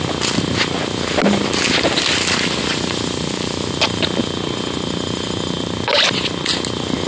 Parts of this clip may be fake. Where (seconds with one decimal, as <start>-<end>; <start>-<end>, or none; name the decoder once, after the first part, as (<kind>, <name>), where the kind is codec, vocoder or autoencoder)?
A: none